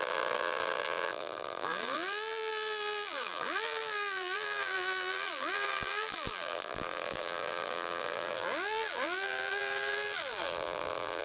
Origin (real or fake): fake